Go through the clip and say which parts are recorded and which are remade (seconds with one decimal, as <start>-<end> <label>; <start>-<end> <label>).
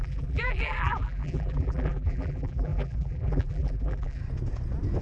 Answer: 0.0-4.2 remade; 4.2-5.0 recorded